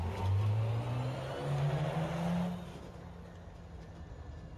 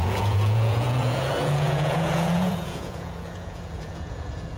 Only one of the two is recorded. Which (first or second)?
first